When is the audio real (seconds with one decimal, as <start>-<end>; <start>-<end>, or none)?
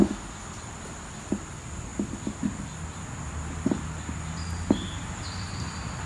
0.0-6.1